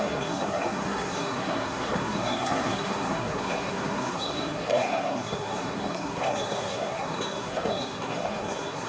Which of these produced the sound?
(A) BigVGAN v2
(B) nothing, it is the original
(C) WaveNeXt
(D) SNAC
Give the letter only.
D